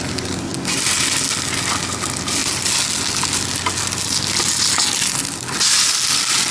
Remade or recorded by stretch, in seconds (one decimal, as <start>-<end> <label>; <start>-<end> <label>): 0.0-6.5 recorded

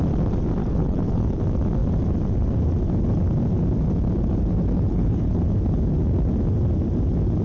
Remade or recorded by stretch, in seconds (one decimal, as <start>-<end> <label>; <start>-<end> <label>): 0.0-0.6 recorded; 0.6-1.4 remade; 1.4-4.9 recorded; 4.9-5.4 remade; 5.4-7.4 recorded

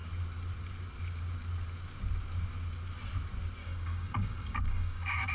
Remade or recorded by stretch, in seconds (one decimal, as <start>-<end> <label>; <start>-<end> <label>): 0.0-3.6 recorded; 3.6-5.3 remade

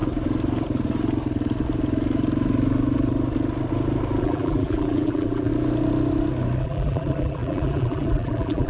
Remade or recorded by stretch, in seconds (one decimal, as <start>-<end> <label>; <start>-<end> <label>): 0.0-4.2 recorded; 4.2-5.5 remade; 5.5-6.6 recorded; 6.6-8.7 remade

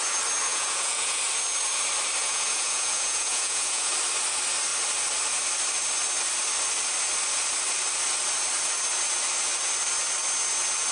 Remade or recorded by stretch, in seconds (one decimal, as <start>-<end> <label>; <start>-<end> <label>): 0.0-0.5 recorded; 0.5-1.2 remade; 1.2-2.2 recorded; 2.2-3.9 remade; 3.9-10.9 recorded

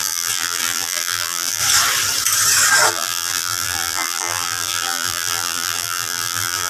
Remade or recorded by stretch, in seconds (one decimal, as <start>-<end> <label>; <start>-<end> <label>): 0.0-1.6 remade; 1.6-2.9 recorded; 2.9-6.7 remade